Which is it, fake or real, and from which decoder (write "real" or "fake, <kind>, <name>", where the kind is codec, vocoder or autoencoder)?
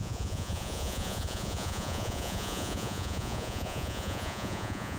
fake, vocoder, Vocos